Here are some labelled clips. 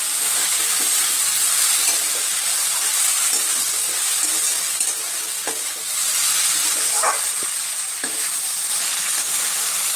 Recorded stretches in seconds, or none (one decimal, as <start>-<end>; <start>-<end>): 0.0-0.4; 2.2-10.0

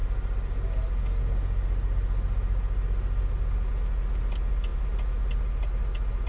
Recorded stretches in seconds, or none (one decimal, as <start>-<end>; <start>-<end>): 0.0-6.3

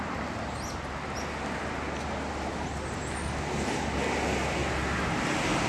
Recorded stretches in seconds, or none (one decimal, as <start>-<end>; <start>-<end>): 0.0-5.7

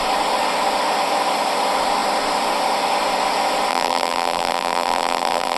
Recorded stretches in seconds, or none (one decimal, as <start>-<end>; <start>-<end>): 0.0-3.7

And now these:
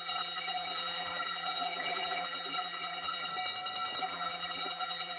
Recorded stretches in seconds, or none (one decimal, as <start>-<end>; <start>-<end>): 3.3-4.0

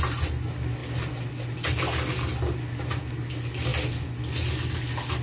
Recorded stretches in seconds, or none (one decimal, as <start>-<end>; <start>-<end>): 0.0-5.2